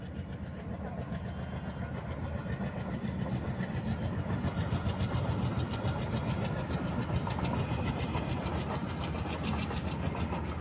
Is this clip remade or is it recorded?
recorded